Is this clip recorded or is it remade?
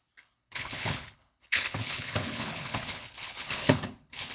remade